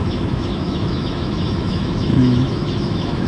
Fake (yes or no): yes